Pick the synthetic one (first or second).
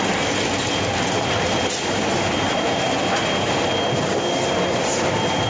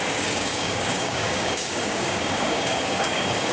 second